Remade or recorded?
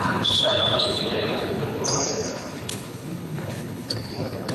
remade